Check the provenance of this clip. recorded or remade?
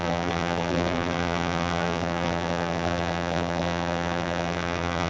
remade